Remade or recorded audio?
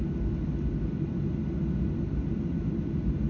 recorded